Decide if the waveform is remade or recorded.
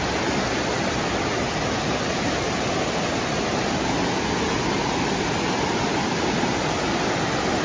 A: recorded